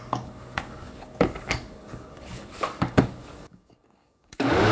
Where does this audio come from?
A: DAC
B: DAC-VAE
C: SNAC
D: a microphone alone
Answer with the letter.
A